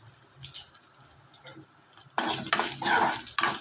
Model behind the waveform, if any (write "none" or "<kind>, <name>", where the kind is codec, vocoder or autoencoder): none